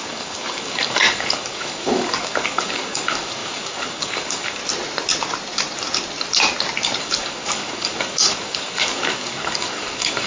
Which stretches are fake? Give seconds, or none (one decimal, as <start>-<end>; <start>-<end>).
0.0-4.6; 7.0-10.3